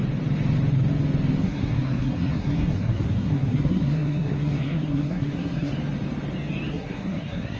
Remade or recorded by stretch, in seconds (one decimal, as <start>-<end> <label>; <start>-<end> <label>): 0.0-1.4 recorded; 1.4-5.7 remade; 5.7-6.7 recorded; 6.7-7.6 remade